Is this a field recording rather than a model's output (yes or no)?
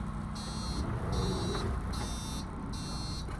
yes